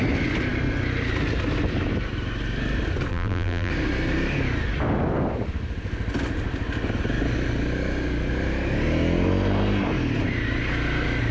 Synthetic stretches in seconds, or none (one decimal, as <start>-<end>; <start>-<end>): 3.1-3.7